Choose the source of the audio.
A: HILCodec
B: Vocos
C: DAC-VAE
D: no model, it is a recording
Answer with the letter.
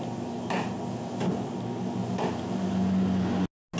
D